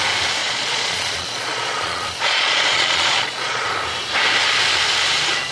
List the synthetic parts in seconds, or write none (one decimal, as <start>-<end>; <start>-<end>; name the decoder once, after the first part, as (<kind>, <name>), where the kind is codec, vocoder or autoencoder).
0.4-3.7 (vocoder, Vocos)